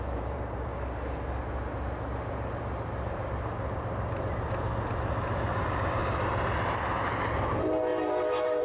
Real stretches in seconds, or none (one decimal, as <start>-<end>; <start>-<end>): 0.7-5.6; 6.0-7.1